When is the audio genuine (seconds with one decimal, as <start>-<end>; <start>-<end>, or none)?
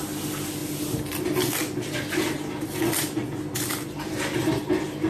0.0-5.1